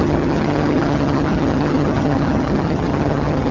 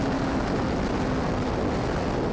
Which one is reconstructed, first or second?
first